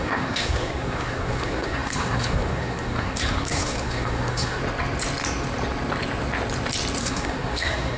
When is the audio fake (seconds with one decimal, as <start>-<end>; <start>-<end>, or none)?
0.0-4.6; 7.0-8.0